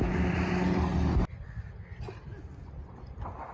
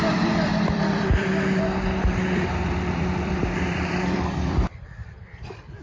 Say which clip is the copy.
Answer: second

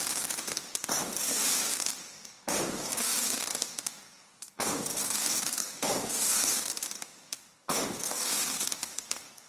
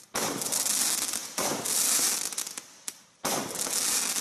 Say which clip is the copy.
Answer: first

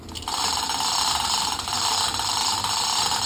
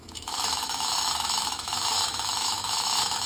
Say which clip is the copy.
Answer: second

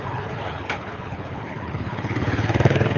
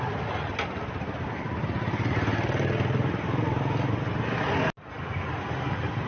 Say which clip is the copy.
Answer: first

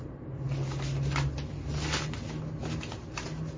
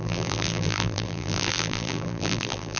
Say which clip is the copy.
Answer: second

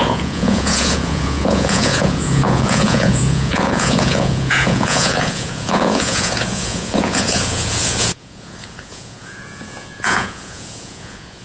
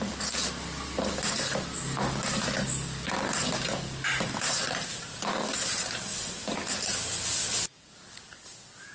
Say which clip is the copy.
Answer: first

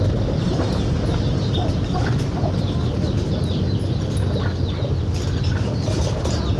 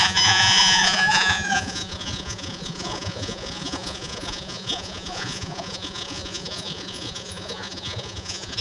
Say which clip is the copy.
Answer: second